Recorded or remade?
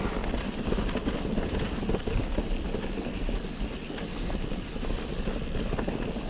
recorded